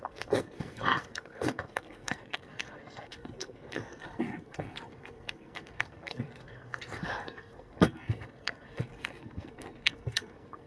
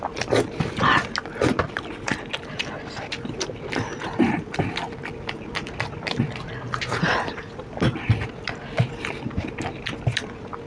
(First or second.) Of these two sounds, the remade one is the first